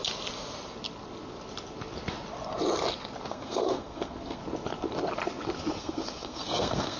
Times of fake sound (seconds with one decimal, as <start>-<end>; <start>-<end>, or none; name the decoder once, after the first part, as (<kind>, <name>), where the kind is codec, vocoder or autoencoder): 3.3-4.4 (codec, SNAC); 5.8-7.0